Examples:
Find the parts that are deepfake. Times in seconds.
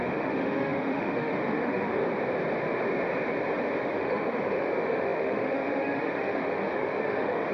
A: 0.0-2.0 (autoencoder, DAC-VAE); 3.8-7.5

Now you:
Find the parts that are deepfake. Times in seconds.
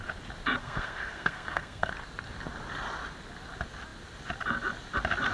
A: 0.6-1.9 (codec, SNAC)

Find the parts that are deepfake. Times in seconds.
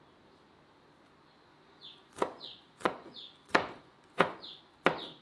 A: 1.5-4.6 (vocoder, Vocos)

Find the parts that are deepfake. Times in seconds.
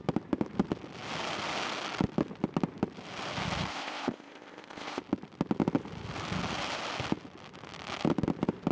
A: 3.7-5.0 (codec, ZipCodec)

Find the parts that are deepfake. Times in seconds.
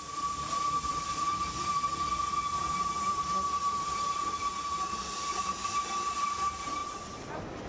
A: 0.0-4.5 (vocoder, BigVGAN v2); 5.8-7.7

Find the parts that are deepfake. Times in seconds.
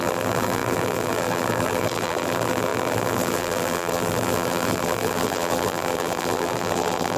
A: 0.0-7.2 (vocoder, BigVGAN v2)